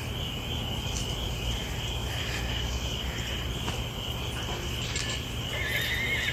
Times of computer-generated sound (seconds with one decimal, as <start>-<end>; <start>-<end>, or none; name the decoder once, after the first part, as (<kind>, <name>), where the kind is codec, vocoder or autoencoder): none